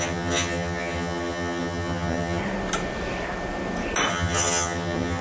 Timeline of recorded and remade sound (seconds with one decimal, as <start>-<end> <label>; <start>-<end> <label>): 0.0-2.4 remade; 2.4-4.1 recorded; 4.1-5.2 remade